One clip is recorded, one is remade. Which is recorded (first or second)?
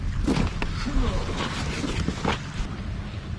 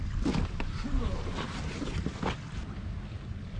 first